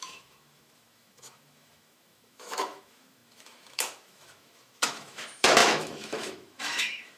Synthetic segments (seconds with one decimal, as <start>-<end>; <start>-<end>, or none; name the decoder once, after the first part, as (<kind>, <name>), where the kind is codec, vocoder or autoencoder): 0.0-7.2 (autoencoder, DAC-VAE)